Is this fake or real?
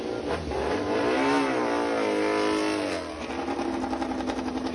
real